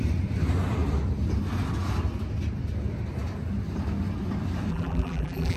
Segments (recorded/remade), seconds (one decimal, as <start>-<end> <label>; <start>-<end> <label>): 0.0-4.7 recorded; 4.7-5.6 remade